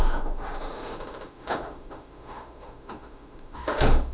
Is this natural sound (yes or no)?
no